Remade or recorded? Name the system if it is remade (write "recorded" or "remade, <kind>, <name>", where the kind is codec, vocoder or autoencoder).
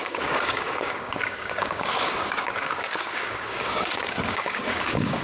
remade, codec, DAC